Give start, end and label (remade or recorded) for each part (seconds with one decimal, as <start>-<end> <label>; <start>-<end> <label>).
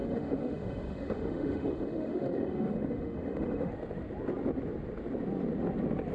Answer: 0.0-3.7 remade; 3.7-6.1 recorded